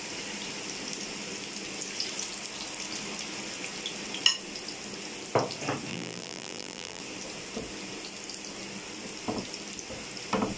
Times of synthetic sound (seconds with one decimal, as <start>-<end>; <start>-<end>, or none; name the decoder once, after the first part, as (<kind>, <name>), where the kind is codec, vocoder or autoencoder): 5.9-7.0 (vocoder, BigVGAN v2)